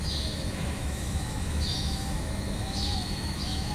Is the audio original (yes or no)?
no